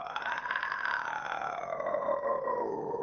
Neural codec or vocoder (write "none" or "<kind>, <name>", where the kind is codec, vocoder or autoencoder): none